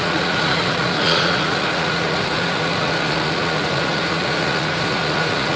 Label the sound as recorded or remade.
remade